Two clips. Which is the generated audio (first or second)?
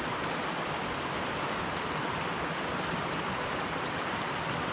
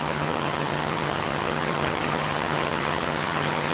second